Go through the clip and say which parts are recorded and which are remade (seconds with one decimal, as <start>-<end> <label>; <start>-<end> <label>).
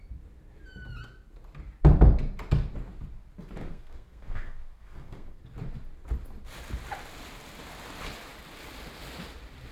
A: 0.0-3.6 recorded; 3.6-5.4 remade; 5.4-9.7 recorded